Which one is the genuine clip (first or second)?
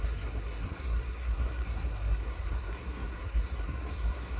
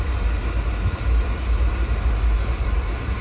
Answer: second